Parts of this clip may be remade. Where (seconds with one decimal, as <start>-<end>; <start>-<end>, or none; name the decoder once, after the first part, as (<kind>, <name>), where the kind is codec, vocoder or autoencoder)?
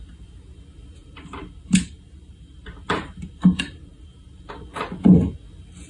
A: 1.0-4.5 (vocoder, BigVGAN v2)